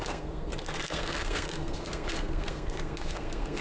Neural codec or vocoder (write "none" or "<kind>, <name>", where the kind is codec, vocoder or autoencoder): codec, SNAC